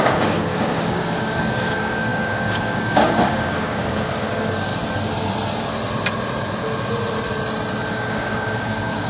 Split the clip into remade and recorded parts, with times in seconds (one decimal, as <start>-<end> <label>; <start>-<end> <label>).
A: 0.0-4.7 remade; 4.7-7.9 recorded; 7.9-9.1 remade